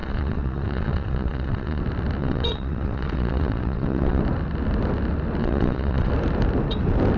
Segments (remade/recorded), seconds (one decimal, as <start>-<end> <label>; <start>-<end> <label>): 0.0-1.8 remade; 1.8-2.2 recorded; 2.2-4.2 remade; 4.2-5.4 recorded; 5.4-6.1 remade; 6.1-7.2 recorded